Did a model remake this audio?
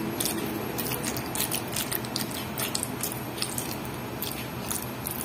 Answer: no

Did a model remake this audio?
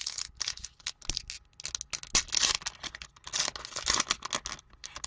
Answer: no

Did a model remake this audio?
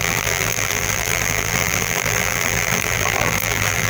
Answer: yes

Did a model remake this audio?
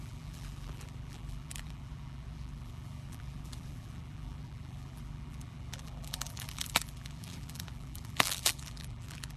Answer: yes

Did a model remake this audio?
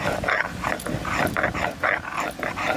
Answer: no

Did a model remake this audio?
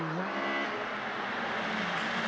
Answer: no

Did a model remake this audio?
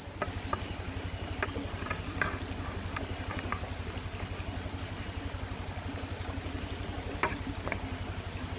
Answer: no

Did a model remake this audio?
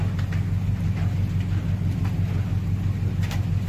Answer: no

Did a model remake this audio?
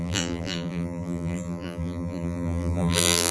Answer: yes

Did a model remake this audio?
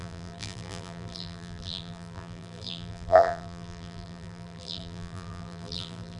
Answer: yes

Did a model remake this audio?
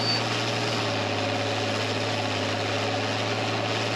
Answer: no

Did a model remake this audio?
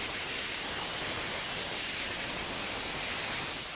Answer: no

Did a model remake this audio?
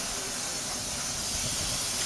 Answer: no